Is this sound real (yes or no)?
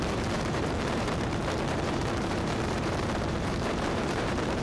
no